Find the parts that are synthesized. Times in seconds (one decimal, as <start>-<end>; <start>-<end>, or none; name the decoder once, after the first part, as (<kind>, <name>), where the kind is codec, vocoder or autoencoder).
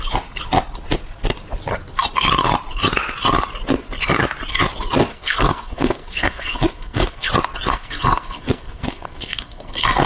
5.1-7.3 (codec, SNAC); 7.7-10.1